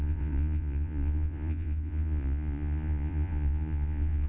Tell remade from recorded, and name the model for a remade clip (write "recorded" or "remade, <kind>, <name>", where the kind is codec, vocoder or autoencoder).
remade, vocoder, Vocos